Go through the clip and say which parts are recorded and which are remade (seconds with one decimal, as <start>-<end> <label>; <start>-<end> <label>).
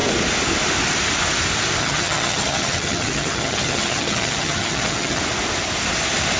0.0-1.8 recorded; 1.8-5.2 remade; 5.2-6.4 recorded